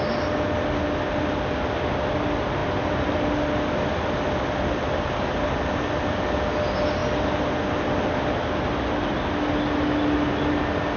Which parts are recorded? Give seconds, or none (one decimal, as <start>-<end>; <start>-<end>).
0.0-11.0